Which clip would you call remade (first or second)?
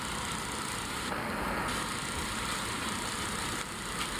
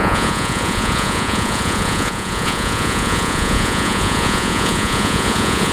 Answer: second